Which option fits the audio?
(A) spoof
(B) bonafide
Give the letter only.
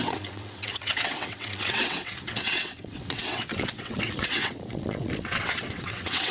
A